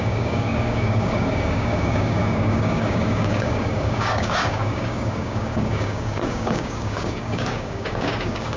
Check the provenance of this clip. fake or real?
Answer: fake